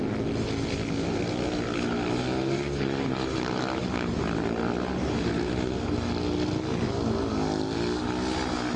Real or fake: real